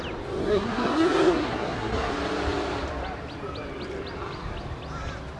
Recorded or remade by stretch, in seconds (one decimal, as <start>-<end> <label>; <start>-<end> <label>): 0.0-0.4 recorded; 0.4-2.1 remade; 2.1-5.4 recorded